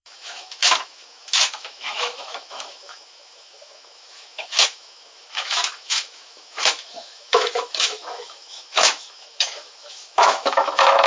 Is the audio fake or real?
fake